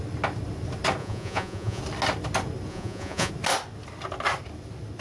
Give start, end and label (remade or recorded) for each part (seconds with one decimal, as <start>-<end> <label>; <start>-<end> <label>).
0.0-1.0 recorded; 1.0-1.8 remade; 1.8-2.7 recorded; 2.7-3.3 remade; 3.3-5.0 recorded